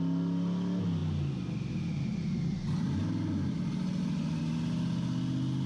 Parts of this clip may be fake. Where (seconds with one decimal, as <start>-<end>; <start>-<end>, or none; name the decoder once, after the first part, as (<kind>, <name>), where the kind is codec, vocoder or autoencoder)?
none